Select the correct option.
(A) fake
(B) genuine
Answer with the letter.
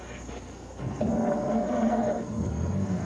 A